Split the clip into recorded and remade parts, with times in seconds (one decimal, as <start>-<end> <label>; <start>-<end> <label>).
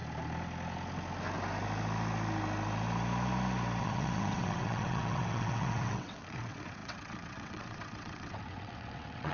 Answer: 0.0-3.8 recorded; 3.8-9.3 remade